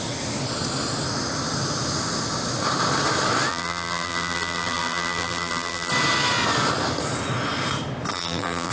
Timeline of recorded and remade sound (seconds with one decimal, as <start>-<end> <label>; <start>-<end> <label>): 0.0-3.5 recorded; 3.5-5.9 remade; 5.9-8.1 recorded; 8.1-8.7 remade